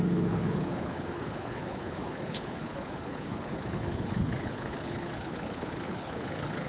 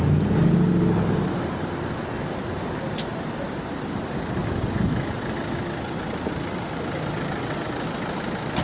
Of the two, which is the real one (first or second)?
second